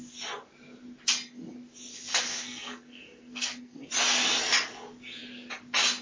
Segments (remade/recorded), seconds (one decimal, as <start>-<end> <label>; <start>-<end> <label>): 0.0-2.1 recorded; 2.1-3.9 remade; 3.9-6.0 recorded